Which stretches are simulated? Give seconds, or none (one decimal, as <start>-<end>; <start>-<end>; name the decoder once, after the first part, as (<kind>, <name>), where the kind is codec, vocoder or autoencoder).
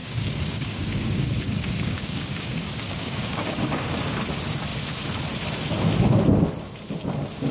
0.0-4.2 (codec, DAC)